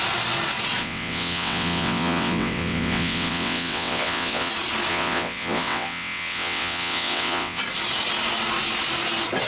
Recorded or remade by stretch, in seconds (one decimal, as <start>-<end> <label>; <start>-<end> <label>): 0.0-0.8 recorded; 0.8-4.5 remade; 4.5-4.9 recorded; 4.9-7.6 remade; 7.6-9.5 recorded